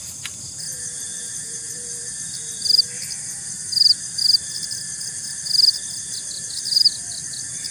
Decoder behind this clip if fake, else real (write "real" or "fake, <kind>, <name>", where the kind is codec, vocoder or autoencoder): real